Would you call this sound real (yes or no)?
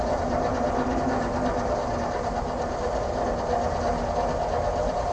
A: yes